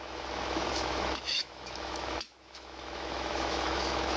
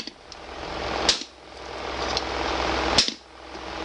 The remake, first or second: first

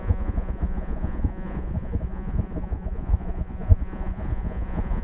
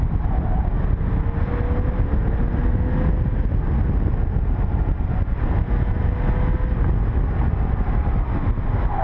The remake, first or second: first